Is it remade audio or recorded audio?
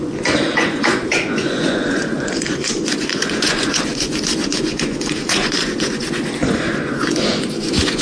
remade